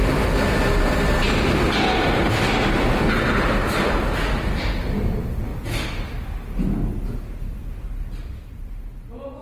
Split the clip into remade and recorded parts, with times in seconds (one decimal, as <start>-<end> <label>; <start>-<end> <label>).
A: 0.0-9.4 recorded